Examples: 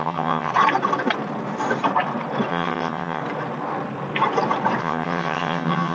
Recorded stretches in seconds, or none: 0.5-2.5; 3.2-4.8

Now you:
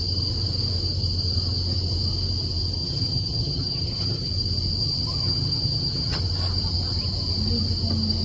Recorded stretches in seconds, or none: 0.0-2.8; 4.3-4.8; 6.2-8.2

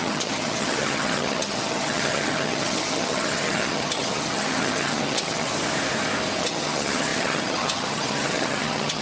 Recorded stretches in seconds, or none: 5.5-6.4

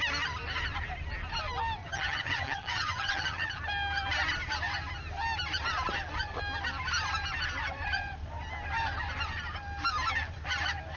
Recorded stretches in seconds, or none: 0.0-1.8; 3.6-11.0